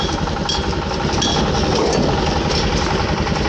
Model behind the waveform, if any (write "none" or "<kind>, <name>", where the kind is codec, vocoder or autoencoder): none